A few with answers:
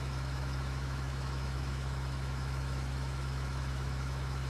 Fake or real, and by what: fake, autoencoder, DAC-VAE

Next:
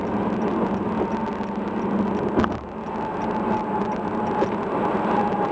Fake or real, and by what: real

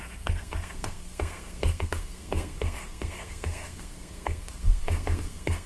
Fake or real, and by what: fake, codec, SNAC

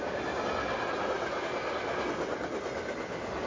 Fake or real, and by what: real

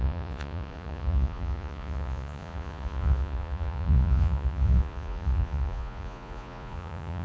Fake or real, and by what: fake, vocoder, Vocos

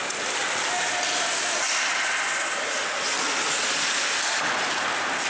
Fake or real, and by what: real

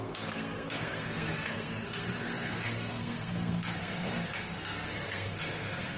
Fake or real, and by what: fake, codec, SNAC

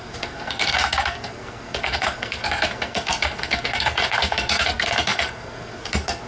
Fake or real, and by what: fake, codec, SNAC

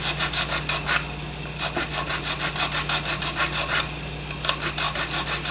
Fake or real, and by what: real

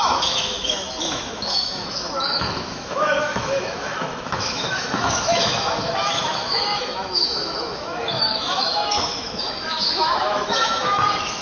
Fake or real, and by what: fake, autoencoder, DAC-VAE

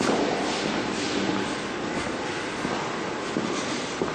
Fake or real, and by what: real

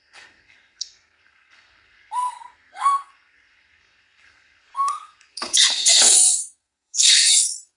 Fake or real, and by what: fake, codec, SNAC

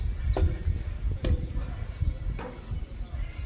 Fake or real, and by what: real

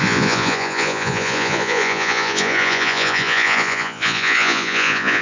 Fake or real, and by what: fake, vocoder, Vocos